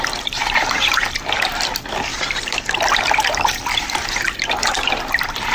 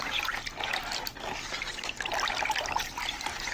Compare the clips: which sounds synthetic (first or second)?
first